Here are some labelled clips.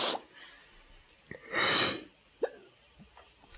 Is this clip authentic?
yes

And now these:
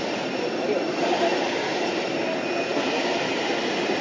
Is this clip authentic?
yes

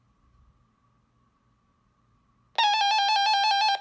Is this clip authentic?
yes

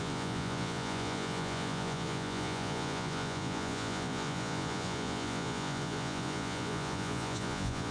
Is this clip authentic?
no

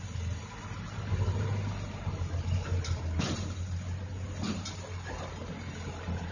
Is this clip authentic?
yes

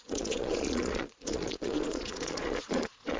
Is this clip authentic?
no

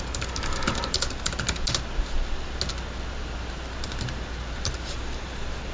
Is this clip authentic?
yes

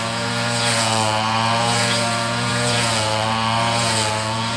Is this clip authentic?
no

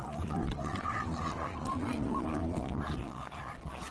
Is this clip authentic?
no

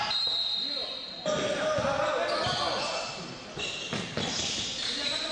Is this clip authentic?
yes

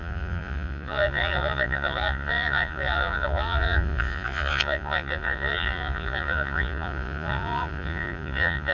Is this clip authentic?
no